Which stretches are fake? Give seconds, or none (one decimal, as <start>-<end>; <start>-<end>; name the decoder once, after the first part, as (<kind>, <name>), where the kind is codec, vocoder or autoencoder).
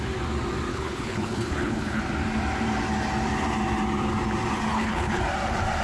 0.7-2.0 (codec, HILCodec); 4.7-5.2